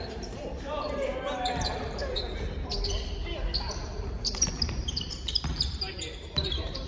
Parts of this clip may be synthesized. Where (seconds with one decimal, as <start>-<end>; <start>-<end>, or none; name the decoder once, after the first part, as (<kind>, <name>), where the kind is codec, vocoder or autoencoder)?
0.0-2.2 (vocoder, BigVGAN v2); 4.8-6.9